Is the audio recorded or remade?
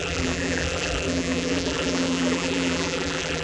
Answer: remade